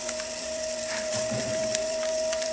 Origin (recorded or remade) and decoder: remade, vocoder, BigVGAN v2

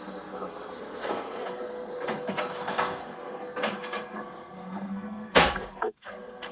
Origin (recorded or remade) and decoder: remade, codec, SNAC